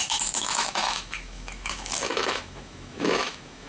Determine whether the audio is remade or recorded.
remade